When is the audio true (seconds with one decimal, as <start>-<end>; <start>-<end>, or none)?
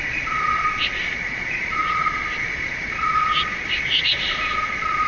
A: none